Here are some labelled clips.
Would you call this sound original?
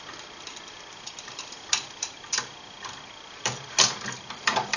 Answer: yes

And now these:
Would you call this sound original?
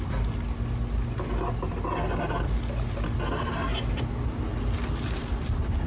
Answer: yes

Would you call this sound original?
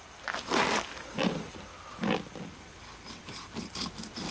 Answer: yes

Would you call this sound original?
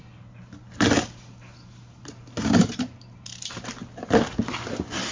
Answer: yes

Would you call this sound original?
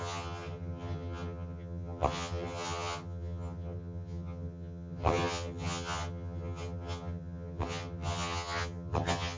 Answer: no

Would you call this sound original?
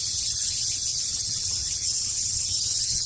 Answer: no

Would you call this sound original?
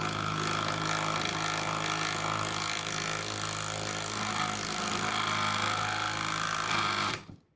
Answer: yes